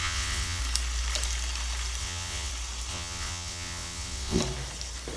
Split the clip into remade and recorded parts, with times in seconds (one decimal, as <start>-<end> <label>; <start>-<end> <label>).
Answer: 0.0-0.6 remade; 0.6-2.0 recorded; 2.0-2.5 remade; 2.5-2.9 recorded; 2.9-4.4 remade; 4.4-5.2 recorded

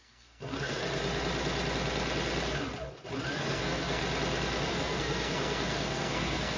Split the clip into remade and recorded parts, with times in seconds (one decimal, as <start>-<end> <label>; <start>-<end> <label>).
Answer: 0.0-0.8 remade; 0.8-3.4 recorded; 3.4-4.0 remade; 4.0-4.7 recorded; 4.7-6.6 remade

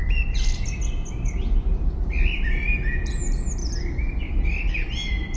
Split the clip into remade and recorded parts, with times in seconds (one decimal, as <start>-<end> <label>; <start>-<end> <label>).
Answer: 0.0-5.4 recorded

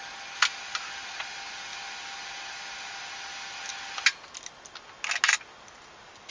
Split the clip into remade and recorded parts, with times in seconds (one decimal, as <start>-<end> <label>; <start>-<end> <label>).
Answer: 0.0-6.3 recorded